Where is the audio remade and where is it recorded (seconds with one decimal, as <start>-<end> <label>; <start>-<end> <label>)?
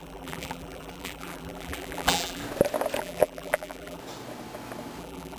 0.0-2.4 remade; 2.4-3.0 recorded; 3.0-4.0 remade; 4.0-5.0 recorded; 5.0-5.4 remade